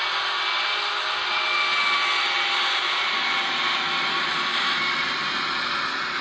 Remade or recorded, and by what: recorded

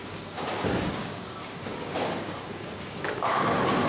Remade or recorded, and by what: remade, codec, DAC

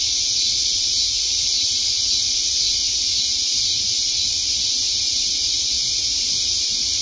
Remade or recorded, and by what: recorded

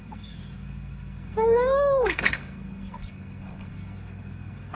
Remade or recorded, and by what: remade, codec, SNAC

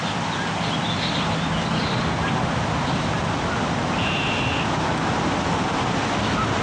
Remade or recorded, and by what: recorded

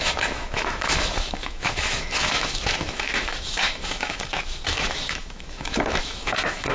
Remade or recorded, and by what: remade, autoencoder, DAC-VAE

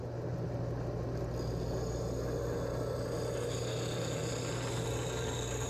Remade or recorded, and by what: recorded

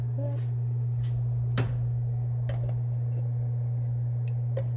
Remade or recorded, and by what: recorded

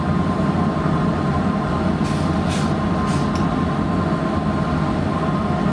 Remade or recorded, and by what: recorded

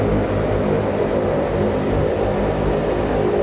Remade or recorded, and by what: recorded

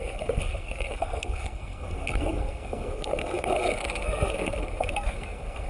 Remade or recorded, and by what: remade, codec, SNAC